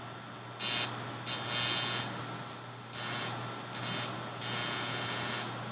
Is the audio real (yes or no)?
yes